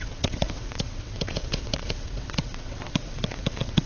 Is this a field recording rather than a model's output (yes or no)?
no